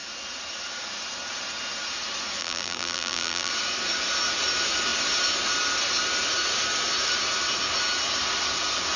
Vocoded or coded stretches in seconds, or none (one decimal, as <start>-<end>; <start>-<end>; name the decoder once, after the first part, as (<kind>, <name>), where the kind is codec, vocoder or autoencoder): 2.4-3.5 (vocoder, BigVGAN v2)